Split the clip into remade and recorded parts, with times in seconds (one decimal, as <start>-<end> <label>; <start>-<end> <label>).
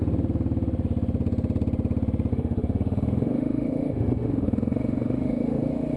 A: 0.0-2.3 recorded; 2.3-6.0 remade